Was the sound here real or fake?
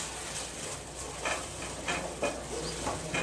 real